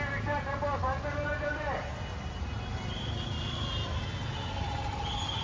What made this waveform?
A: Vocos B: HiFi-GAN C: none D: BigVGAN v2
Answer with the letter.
C